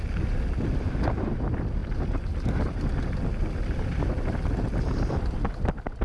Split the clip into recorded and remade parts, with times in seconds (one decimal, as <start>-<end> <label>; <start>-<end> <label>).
0.0-6.0 recorded